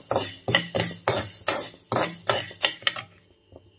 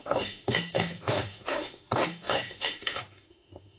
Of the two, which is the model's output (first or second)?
second